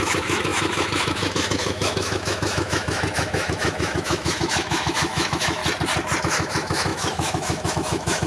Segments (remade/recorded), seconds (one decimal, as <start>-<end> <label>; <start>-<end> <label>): 0.0-5.6 remade; 5.6-6.2 recorded; 6.2-8.3 remade